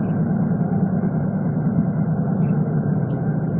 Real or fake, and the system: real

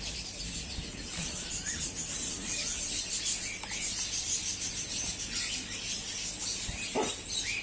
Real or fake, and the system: real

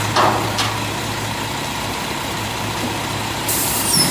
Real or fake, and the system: fake, vocoder, BigVGAN v2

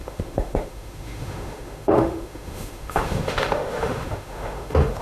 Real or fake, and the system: fake, autoencoder, DAC-VAE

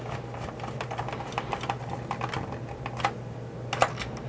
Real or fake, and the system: real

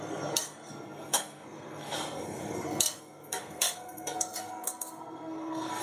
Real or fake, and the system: fake, codec, SNAC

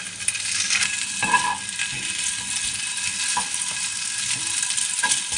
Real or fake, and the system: real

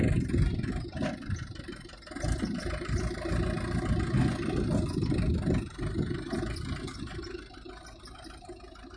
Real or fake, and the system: real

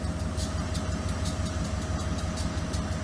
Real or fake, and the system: real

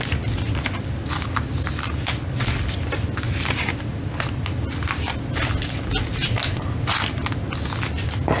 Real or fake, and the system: real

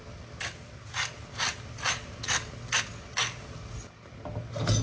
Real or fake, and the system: real